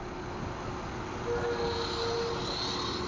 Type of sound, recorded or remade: recorded